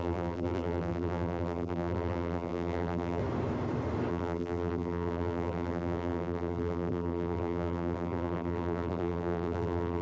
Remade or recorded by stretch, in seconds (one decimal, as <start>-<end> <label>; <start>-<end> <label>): 0.0-3.2 remade; 3.2-4.1 recorded; 4.1-10.0 remade